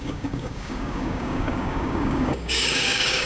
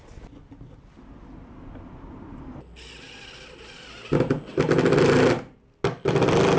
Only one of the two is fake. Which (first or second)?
first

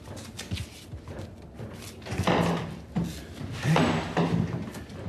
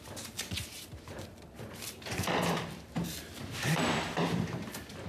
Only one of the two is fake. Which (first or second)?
second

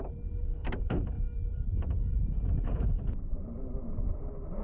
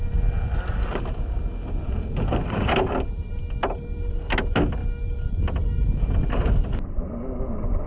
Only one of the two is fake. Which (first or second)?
first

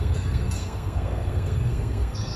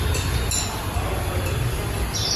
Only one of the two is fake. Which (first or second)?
first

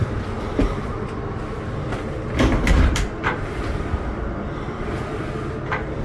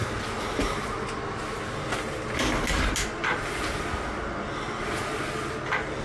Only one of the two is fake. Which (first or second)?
first